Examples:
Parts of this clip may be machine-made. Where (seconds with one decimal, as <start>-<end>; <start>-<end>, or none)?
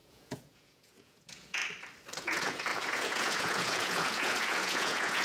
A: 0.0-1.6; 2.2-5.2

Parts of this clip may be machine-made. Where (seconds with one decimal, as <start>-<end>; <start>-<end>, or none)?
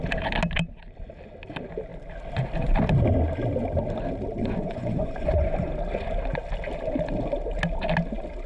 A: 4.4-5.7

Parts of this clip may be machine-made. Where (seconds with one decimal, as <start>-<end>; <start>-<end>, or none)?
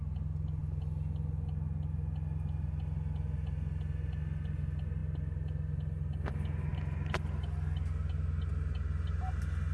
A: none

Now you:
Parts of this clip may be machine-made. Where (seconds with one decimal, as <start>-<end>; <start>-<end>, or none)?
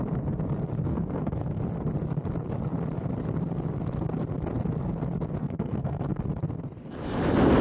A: 0.9-1.6; 5.4-6.2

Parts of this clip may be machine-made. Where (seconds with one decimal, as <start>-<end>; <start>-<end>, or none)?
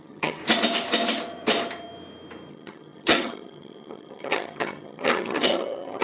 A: 0.0-0.4; 2.5-6.0